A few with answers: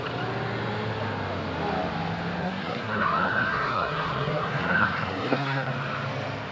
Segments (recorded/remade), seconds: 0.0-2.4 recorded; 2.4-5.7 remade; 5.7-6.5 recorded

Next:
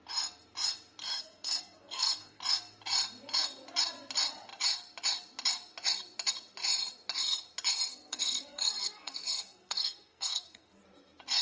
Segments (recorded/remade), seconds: 0.0-1.0 recorded; 1.0-2.4 remade; 2.4-7.9 recorded; 7.9-10.8 remade; 10.8-11.4 recorded

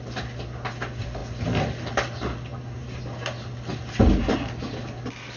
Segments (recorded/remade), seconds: 0.0-2.5 recorded; 2.5-3.0 remade; 3.0-5.4 recorded

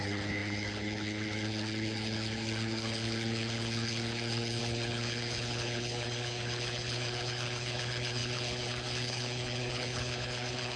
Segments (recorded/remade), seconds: 0.0-10.8 remade

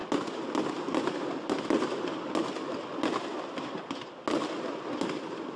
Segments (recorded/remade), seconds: 0.0-5.6 recorded